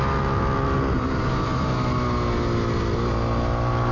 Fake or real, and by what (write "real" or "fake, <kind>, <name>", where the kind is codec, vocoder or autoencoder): real